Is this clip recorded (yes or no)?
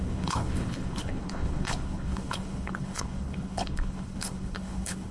no